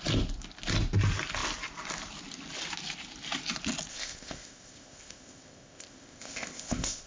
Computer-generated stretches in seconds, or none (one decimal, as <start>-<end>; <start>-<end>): 3.9-7.1